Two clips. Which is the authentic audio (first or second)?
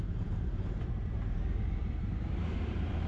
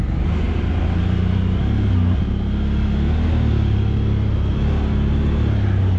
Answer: second